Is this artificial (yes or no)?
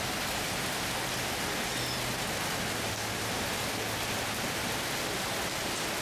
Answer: no